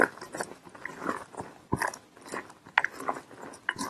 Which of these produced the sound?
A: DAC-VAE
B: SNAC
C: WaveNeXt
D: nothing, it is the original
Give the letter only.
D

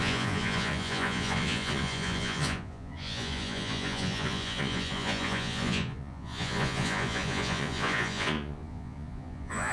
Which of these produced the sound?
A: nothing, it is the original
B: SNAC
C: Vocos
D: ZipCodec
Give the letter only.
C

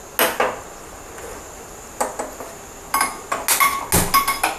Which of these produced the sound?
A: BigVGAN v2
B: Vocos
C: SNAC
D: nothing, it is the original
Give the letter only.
D